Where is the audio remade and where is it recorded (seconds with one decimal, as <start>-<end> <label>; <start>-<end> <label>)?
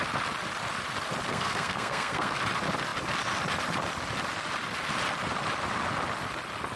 0.0-1.3 recorded; 1.3-2.4 remade; 2.4-6.8 recorded